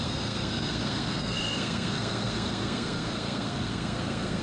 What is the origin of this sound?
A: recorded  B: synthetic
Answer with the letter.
B